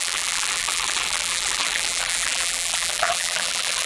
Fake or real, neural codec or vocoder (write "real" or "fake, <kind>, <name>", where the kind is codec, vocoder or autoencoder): fake, vocoder, BigVGAN v2